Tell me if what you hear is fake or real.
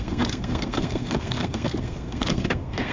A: fake